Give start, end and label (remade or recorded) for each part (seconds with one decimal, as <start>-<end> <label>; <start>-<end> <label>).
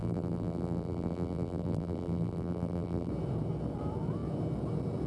0.0-3.1 remade; 3.1-5.1 recorded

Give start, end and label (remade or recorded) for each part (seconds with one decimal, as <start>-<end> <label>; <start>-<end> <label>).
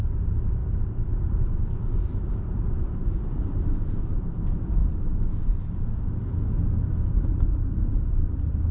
0.0-0.6 remade; 0.6-1.2 recorded; 1.2-4.8 remade; 4.8-7.2 recorded; 7.2-8.7 remade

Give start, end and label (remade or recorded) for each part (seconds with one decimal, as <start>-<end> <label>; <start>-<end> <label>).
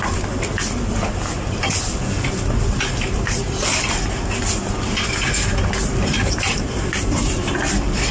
0.0-5.8 recorded; 5.8-7.6 remade; 7.6-8.1 recorded